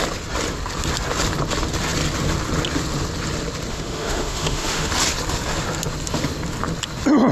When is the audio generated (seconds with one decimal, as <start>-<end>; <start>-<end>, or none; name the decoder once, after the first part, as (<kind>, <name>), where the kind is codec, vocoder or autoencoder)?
3.7-4.9 (autoencoder, DAC-VAE)